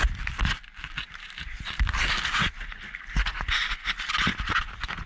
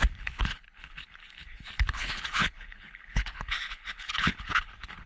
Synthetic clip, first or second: second